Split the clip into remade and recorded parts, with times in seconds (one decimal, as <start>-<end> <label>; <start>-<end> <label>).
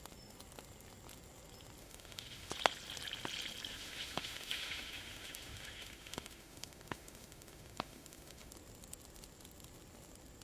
0.0-1.8 recorded; 1.8-2.5 remade; 2.5-3.7 recorded; 3.7-8.5 remade; 8.5-10.4 recorded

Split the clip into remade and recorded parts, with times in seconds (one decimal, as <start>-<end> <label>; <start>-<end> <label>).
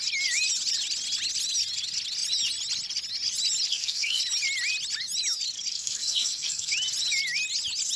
0.0-3.7 recorded; 3.7-4.2 remade; 4.2-5.7 recorded; 5.7-6.7 remade; 6.7-8.0 recorded